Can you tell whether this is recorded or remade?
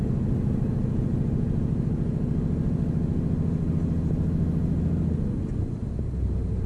recorded